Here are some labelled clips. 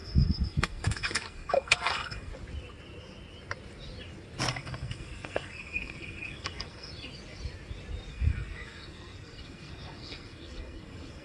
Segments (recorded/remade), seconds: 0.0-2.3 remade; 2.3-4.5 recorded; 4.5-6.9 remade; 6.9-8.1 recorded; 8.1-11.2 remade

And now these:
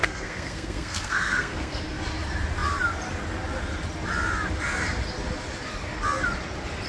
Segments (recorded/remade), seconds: 0.0-1.8 remade; 1.8-6.9 recorded

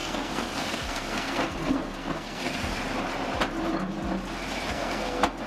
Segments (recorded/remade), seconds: 0.0-2.7 remade; 2.7-4.7 recorded; 4.7-5.5 remade

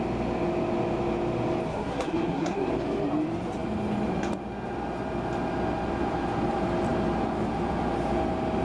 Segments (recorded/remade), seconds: 0.0-1.7 recorded; 1.7-2.7 remade; 2.7-8.6 recorded